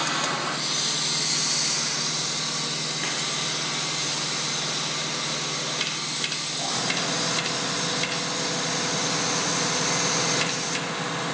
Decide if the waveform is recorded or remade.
recorded